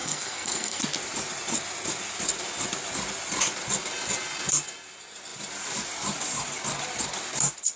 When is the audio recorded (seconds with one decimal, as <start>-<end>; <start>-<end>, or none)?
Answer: 0.8-7.8